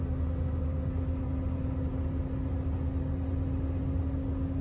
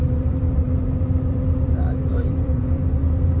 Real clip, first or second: first